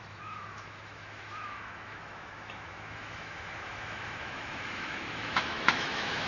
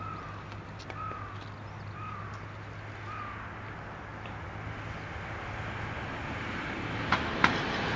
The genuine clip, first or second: second